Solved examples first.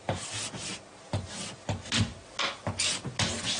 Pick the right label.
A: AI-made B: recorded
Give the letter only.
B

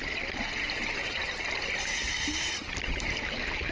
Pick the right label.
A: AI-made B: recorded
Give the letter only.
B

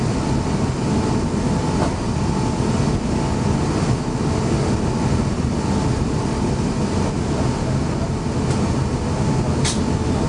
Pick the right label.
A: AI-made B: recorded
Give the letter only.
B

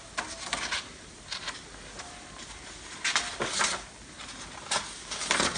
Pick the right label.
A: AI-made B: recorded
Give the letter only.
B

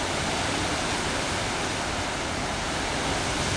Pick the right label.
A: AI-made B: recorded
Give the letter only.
B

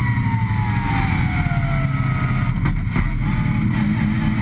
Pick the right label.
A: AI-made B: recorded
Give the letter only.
B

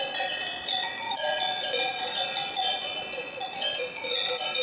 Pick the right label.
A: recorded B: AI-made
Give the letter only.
B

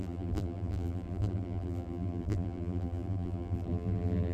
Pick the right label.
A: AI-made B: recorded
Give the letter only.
A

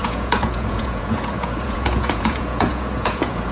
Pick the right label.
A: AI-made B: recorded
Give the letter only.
A